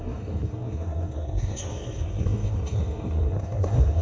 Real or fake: fake